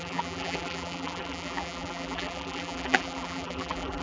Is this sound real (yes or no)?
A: no